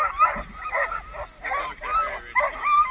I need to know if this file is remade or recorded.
recorded